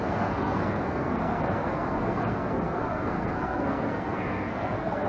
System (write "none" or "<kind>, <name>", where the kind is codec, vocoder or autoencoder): codec, SNAC